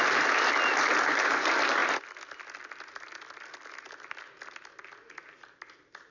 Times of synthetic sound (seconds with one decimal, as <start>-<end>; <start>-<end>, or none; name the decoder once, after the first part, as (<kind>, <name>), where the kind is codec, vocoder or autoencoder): none